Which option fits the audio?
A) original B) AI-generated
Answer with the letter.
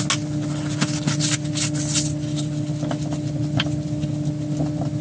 A